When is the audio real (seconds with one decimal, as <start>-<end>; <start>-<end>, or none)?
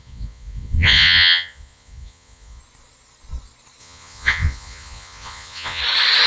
2.6-3.8; 5.8-6.3